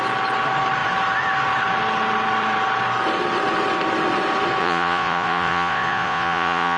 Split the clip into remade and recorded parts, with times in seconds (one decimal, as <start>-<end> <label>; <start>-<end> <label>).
0.0-4.6 recorded; 4.6-6.8 remade